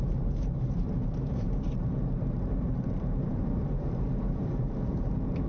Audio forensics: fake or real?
fake